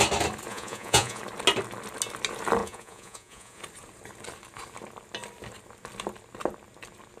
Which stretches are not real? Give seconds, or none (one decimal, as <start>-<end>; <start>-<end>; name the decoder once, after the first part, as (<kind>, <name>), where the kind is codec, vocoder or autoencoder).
0.5-1.2 (vocoder, Vocos); 2.6-3.6